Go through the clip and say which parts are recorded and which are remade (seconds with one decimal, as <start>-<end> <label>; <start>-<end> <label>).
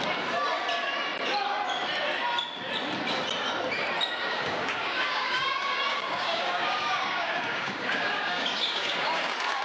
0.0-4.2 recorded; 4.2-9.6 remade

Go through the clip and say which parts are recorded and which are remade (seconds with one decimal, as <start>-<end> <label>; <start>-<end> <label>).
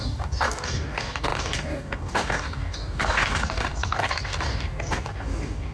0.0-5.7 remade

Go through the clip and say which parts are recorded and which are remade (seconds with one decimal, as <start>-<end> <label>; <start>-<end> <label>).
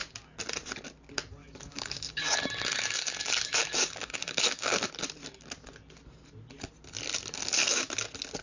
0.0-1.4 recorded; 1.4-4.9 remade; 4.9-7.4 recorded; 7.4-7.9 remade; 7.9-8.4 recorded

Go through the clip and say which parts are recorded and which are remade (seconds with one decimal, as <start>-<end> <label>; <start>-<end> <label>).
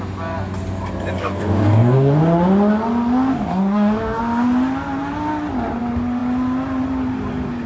0.0-1.2 recorded; 1.2-2.2 remade; 2.2-3.3 recorded; 3.3-4.2 remade; 4.2-7.7 recorded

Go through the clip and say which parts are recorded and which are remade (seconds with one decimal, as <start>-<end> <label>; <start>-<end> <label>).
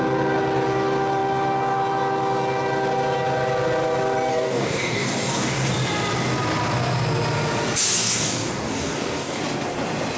0.0-4.3 recorded; 4.3-5.7 remade; 5.7-8.0 recorded; 8.0-9.4 remade; 9.4-10.2 recorded